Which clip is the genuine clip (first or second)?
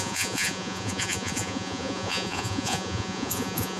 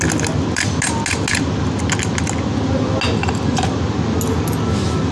second